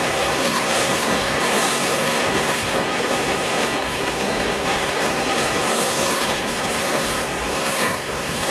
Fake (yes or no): yes